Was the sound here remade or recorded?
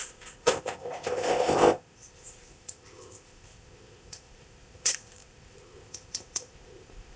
remade